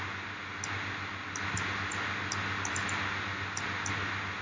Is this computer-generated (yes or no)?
no